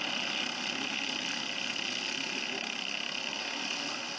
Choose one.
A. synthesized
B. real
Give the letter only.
B